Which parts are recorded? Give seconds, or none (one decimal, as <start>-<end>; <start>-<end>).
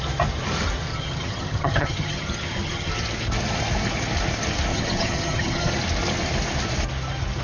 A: 0.0-0.9; 2.9-4.7; 5.7-7.4